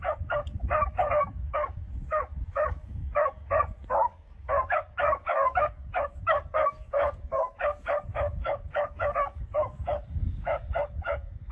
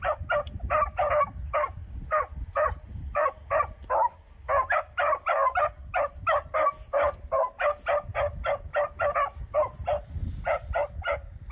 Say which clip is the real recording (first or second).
second